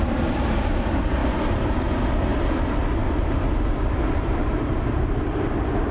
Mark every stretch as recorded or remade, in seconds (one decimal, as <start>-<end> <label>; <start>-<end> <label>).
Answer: 0.0-2.3 recorded; 2.3-2.8 remade; 2.8-5.9 recorded